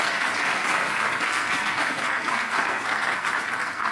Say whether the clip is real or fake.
fake